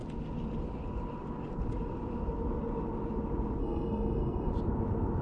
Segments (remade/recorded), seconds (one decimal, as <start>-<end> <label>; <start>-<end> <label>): 0.0-3.6 recorded; 3.6-4.5 remade; 4.5-5.2 recorded